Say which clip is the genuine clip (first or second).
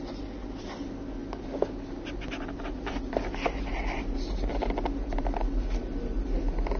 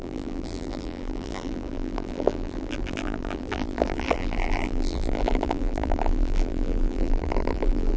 first